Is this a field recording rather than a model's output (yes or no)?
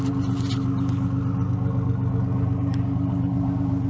yes